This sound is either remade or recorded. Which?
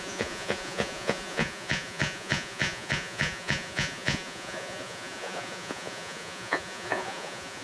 remade